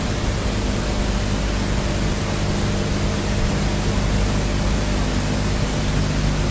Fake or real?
real